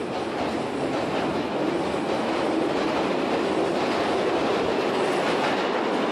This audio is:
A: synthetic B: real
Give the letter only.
B